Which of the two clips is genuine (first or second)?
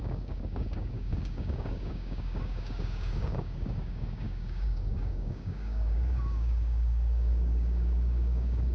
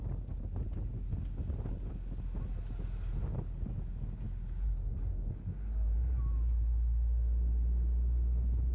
second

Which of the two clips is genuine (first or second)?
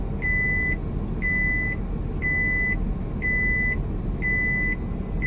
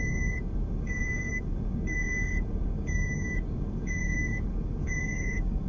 first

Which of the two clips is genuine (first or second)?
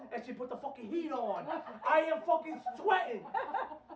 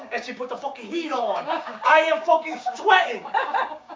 first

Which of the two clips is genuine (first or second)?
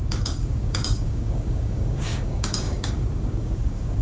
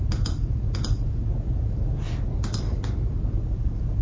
second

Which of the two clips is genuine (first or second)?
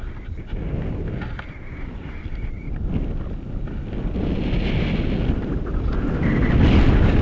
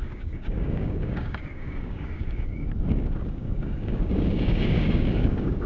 first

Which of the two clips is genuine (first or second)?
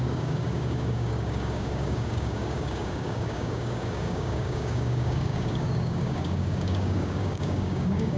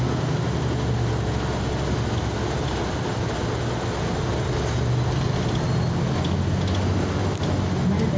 second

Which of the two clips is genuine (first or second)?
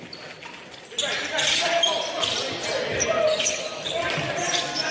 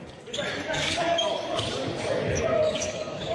first